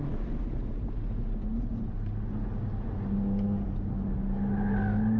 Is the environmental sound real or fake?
real